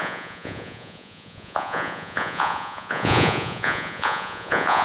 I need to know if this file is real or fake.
fake